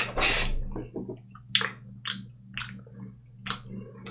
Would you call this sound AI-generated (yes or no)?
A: no